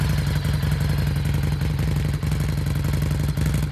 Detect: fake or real real